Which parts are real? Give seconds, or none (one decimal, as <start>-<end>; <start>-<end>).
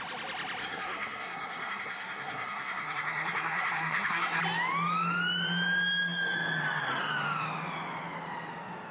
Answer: 0.0-0.6; 4.4-8.9